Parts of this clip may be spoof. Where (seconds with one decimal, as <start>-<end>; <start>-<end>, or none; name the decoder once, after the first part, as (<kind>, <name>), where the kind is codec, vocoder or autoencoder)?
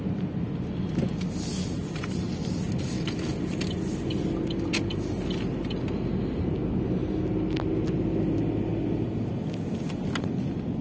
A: none